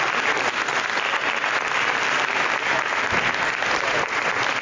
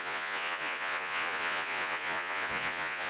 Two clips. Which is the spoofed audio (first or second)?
second